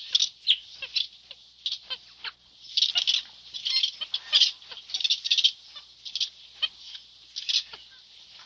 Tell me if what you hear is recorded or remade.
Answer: recorded